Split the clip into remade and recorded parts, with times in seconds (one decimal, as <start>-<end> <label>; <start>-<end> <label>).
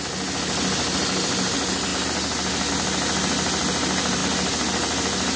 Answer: 0.0-5.4 recorded